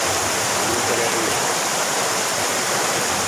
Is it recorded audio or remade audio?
recorded